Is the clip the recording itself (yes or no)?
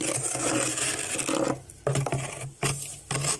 yes